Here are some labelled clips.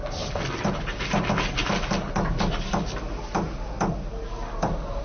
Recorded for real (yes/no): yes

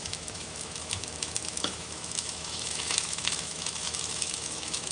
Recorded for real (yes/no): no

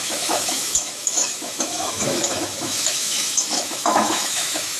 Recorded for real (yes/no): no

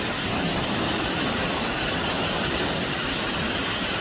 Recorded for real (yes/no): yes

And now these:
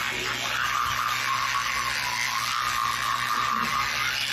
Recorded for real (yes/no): yes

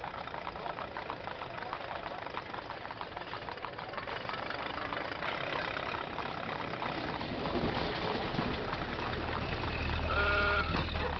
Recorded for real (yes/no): yes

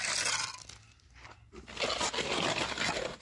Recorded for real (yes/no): yes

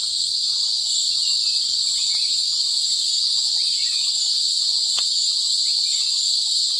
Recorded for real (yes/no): yes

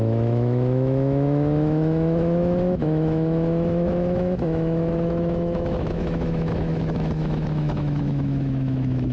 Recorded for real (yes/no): no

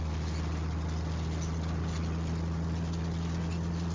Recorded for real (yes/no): yes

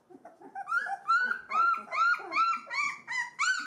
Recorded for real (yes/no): yes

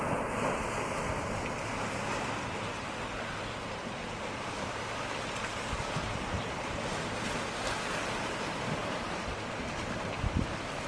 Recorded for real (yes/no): yes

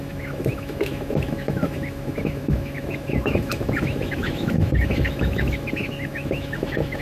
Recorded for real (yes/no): no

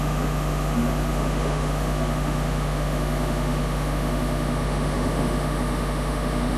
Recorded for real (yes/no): no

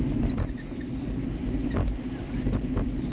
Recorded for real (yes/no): yes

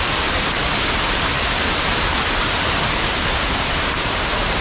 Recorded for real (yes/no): yes